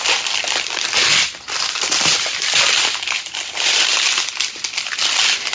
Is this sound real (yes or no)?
yes